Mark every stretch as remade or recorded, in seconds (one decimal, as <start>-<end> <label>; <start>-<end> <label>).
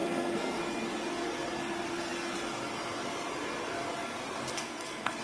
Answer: 0.0-0.6 remade; 0.6-4.5 recorded; 4.5-5.2 remade